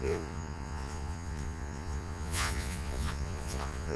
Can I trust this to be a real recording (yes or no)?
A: no